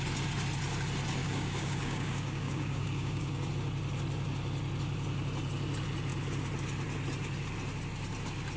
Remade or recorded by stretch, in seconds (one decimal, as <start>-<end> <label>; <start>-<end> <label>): 0.0-1.2 recorded; 1.2-3.5 remade; 3.5-8.6 recorded